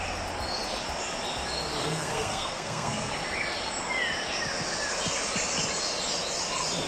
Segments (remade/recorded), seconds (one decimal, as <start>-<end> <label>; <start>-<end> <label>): 0.0-1.8 recorded; 1.8-3.1 remade; 3.1-6.9 recorded